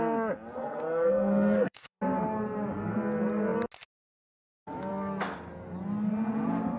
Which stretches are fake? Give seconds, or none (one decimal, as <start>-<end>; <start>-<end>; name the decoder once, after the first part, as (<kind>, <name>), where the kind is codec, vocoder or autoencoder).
0.6-2.0 (codec, SNAC)